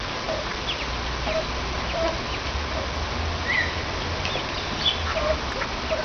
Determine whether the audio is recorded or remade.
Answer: recorded